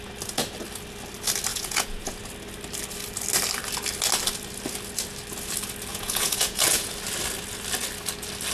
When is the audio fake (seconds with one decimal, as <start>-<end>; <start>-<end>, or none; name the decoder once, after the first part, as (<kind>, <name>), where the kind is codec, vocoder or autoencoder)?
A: 1.5-2.2 (vocoder, Vocos); 5.9-6.9